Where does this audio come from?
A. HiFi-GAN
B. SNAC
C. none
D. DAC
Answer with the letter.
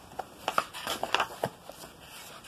C